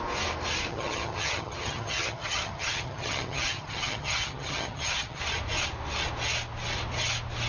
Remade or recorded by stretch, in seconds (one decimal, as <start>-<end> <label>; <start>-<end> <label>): 0.0-0.7 recorded; 0.7-5.2 remade; 5.2-7.5 recorded